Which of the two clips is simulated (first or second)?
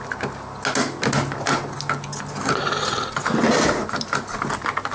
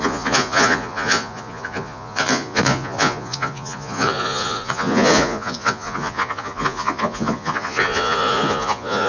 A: second